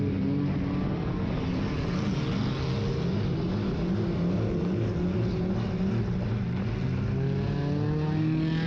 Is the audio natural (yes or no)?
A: yes